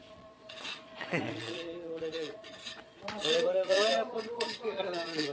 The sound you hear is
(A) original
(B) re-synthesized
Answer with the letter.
B